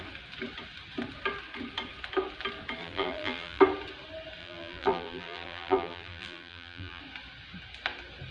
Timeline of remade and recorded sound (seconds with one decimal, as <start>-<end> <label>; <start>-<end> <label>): 0.0-2.8 recorded; 2.8-3.6 remade; 3.6-4.4 recorded; 4.4-7.0 remade; 7.0-8.3 recorded